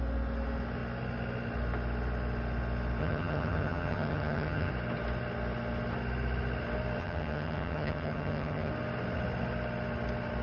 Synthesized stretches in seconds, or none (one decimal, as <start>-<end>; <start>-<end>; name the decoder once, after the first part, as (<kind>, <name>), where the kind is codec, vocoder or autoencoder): 3.0-4.7 (vocoder, HiFi-GAN); 7.0-8.7